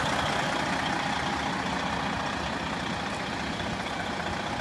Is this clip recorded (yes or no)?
yes